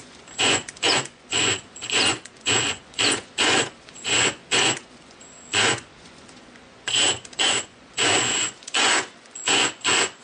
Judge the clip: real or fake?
fake